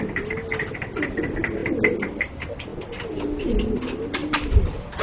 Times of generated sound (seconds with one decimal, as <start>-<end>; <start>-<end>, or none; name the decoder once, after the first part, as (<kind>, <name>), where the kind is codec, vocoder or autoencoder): none